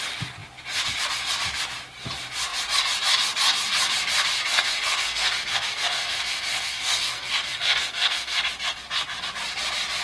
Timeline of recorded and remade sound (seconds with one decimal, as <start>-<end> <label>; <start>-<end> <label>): 0.0-4.5 recorded; 4.5-8.4 remade; 8.4-10.0 recorded